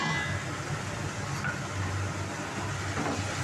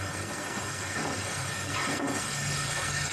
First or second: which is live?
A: first